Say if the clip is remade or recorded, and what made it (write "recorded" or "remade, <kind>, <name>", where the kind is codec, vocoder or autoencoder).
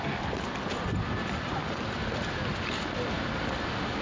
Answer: recorded